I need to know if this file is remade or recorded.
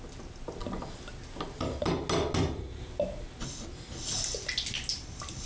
recorded